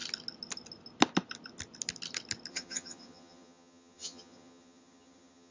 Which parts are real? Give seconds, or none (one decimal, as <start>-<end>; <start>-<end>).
0.0-2.5